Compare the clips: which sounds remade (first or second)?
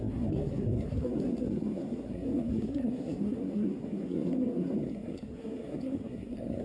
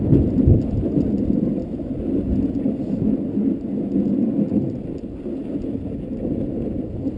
first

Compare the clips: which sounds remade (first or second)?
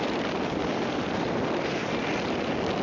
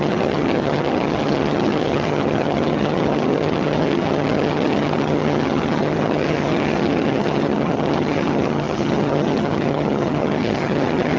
second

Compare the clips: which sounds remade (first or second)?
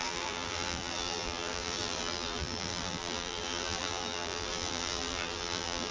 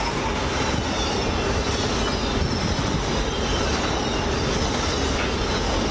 first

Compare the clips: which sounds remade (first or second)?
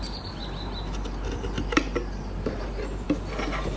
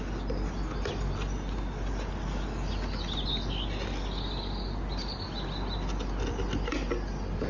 first